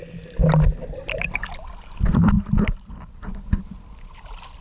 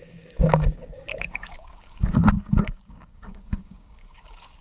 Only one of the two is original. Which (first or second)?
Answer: first